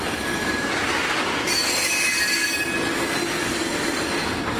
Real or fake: real